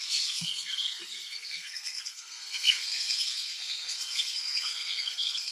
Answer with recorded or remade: remade